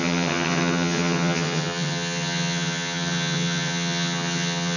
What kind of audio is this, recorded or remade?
remade